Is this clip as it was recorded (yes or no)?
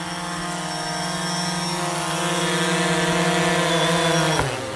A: yes